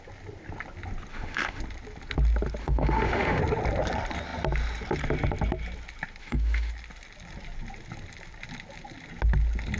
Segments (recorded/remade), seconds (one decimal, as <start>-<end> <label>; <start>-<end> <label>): 0.0-1.1 recorded; 1.1-1.6 remade; 1.6-2.6 recorded; 2.6-3.4 remade; 3.4-6.2 recorded; 6.2-6.7 remade; 6.7-9.8 recorded